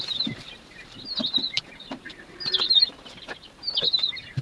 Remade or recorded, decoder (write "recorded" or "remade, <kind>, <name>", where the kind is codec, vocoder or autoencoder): remade, vocoder, BigVGAN v2